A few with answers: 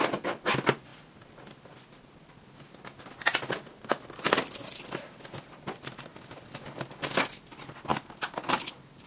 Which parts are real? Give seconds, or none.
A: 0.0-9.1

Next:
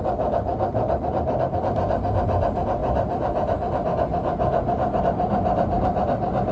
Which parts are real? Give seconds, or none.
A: 2.8-5.0